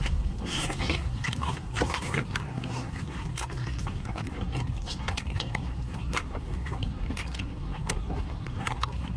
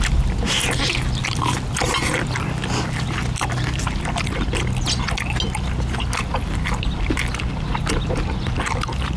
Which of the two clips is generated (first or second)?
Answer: first